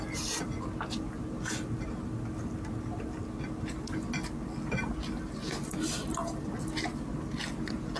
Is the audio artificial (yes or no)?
yes